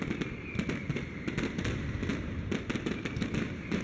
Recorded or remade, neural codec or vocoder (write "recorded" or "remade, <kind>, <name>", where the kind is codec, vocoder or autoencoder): recorded